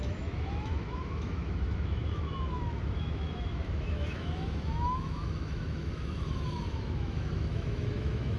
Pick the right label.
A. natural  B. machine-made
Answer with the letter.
B